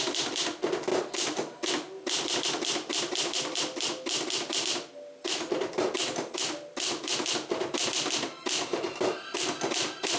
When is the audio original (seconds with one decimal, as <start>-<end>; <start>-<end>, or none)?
0.0-0.9; 1.7-8.7; 9.2-10.2